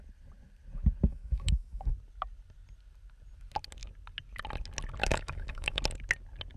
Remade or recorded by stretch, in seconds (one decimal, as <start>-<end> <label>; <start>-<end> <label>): 0.0-1.1 recorded; 1.1-1.9 remade; 1.9-5.0 recorded; 5.0-5.8 remade; 5.8-6.6 recorded